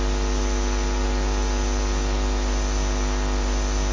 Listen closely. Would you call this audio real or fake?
real